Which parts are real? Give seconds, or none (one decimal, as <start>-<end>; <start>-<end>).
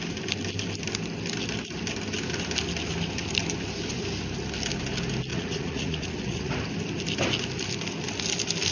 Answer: 0.0-5.3; 6.5-8.7